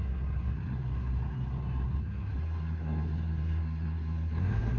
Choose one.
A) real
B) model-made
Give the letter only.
B